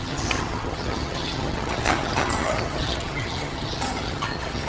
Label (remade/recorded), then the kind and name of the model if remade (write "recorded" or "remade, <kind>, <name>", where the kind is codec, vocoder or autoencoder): remade, vocoder, HiFi-GAN